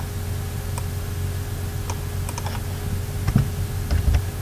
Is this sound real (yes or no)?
yes